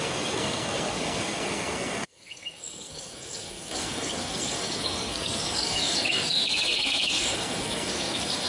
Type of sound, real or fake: fake